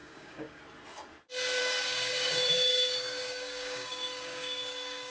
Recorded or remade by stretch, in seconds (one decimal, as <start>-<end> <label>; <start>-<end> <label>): 0.0-0.6 remade; 0.6-1.6 recorded; 1.6-5.1 remade